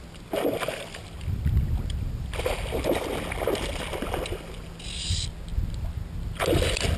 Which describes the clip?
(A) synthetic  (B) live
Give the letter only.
B